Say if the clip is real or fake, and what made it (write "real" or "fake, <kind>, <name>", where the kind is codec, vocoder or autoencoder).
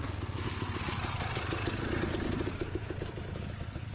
real